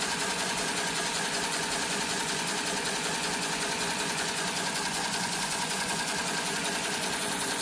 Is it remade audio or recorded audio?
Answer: remade